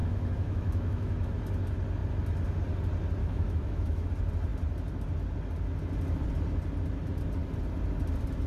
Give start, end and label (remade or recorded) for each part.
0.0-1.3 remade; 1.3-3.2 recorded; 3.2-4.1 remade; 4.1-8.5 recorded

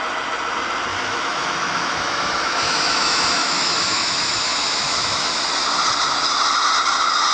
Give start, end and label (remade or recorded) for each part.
0.0-0.9 recorded; 0.9-5.3 remade; 5.3-7.3 recorded

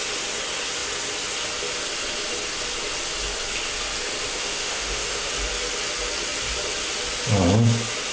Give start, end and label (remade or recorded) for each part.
0.0-4.3 recorded; 4.3-5.3 remade; 5.3-8.1 recorded